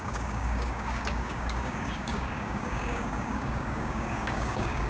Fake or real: fake